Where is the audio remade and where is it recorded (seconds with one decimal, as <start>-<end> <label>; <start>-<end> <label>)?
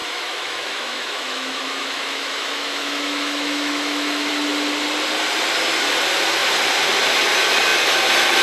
0.0-4.3 remade; 4.3-8.4 recorded